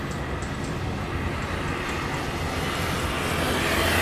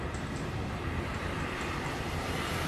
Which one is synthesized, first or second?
second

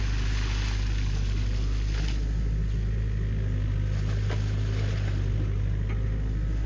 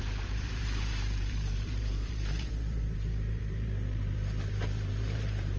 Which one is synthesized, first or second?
second